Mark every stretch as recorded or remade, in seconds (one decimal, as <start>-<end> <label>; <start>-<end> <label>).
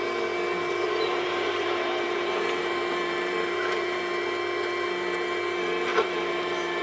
0.0-0.8 recorded; 0.8-4.0 remade; 4.0-5.9 recorded; 5.9-6.8 remade